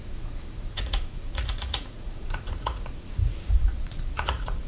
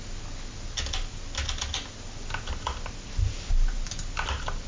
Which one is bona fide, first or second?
second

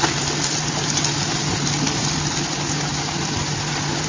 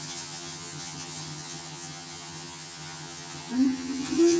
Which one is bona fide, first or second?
first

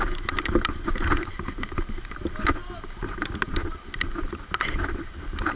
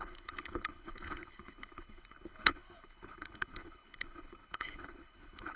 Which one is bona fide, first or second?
first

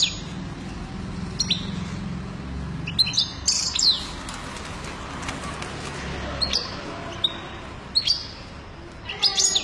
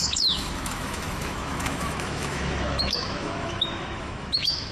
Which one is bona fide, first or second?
first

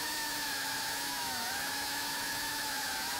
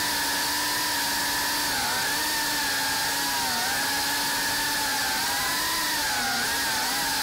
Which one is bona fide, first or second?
second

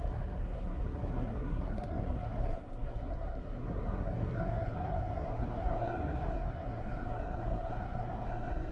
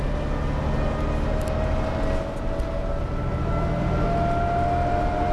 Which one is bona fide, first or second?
second